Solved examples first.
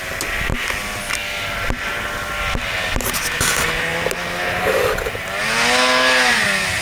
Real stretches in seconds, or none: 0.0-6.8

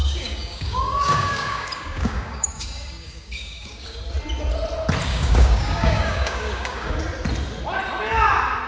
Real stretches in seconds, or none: 4.0-5.1; 7.0-8.7